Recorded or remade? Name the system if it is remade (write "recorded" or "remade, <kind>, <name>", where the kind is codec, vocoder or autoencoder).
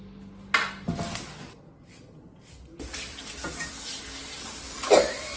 recorded